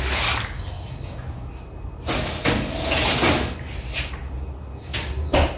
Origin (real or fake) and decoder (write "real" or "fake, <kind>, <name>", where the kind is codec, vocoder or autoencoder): real